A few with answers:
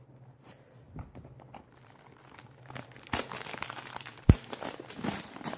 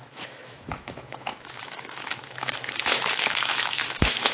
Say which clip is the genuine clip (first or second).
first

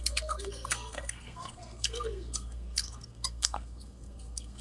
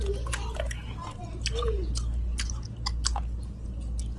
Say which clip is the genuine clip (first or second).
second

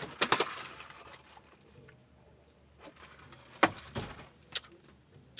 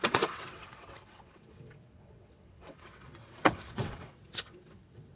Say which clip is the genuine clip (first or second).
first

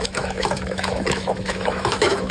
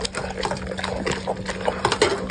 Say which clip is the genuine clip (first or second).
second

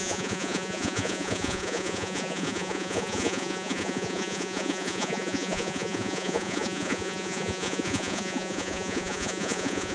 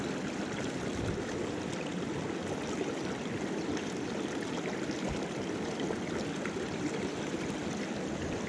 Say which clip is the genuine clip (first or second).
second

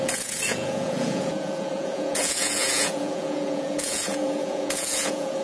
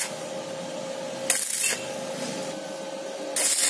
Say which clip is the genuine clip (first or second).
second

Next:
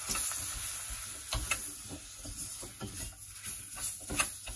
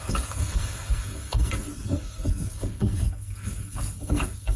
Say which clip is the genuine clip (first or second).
first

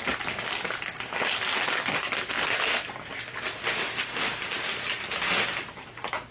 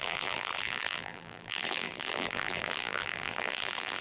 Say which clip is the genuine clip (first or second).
first